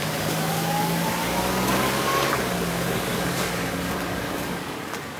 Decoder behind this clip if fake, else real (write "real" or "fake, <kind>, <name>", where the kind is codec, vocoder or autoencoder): fake, codec, DAC